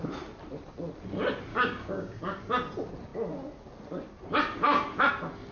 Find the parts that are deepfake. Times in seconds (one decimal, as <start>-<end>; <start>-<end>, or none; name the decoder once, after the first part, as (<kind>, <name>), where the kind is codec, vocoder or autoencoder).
1.5-2.2 (codec, DAC)

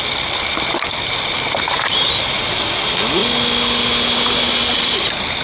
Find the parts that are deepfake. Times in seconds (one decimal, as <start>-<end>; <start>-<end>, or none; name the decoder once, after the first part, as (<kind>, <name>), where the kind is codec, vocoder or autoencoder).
none

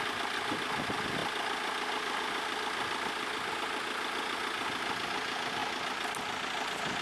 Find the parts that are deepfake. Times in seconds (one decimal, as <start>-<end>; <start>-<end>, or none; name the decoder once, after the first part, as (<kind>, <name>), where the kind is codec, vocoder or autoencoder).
none

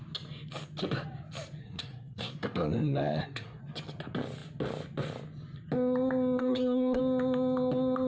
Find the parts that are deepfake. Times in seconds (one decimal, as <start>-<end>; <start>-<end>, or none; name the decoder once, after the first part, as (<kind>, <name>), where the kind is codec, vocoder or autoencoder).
1.6-3.6 (codec, SNAC); 6.4-7.0

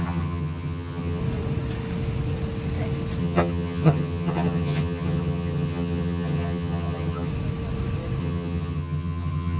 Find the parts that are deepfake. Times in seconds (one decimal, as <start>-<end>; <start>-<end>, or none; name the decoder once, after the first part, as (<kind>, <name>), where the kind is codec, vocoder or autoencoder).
0.0-1.2 (vocoder, HiFi-GAN); 3.2-7.3; 8.2-9.6

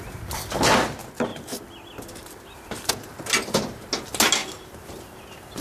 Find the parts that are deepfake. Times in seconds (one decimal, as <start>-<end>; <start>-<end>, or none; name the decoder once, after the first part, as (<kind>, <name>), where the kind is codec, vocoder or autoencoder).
1.3-2.9 (vocoder, BigVGAN v2); 4.4-5.6

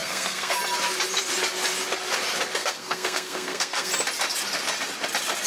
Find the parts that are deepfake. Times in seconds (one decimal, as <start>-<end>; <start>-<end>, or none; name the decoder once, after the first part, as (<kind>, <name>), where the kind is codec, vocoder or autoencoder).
0.0-0.6 (codec, SNAC); 2.6-3.9